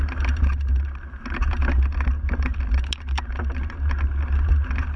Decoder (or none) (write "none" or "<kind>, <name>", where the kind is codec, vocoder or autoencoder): vocoder, BigVGAN v2